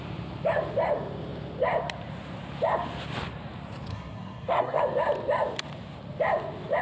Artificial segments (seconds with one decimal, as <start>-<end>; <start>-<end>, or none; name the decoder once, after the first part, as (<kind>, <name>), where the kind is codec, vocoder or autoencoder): 3.9-4.8 (codec, SNAC)